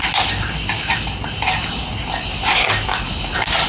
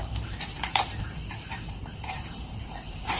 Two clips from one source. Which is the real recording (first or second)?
first